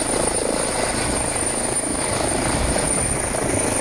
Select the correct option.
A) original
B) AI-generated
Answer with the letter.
A